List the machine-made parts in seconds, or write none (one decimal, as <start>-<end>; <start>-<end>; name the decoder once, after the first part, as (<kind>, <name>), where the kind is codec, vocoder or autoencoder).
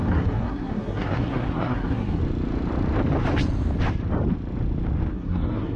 0.0-2.2 (codec, SNAC); 5.1-5.8